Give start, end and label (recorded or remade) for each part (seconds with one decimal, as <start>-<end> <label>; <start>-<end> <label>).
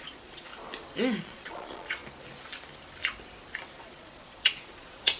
0.0-0.5 remade; 0.5-1.2 recorded; 1.2-2.0 remade; 2.0-3.8 recorded; 3.8-5.2 remade